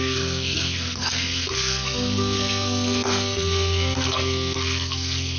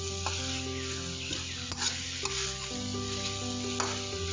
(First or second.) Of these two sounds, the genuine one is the second